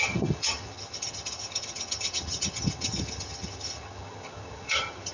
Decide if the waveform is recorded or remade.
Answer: remade